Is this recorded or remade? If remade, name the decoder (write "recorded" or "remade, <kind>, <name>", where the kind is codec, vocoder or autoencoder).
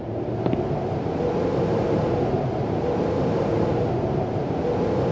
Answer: recorded